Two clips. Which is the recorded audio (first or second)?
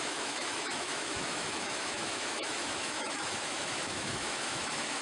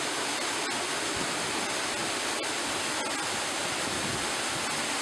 second